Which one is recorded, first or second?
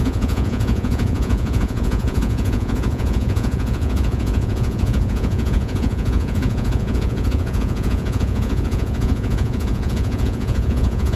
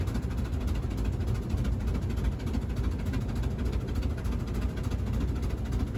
second